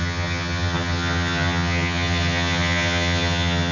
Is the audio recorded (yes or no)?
no